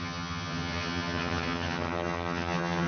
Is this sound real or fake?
fake